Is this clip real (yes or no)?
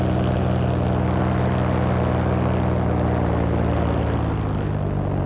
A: yes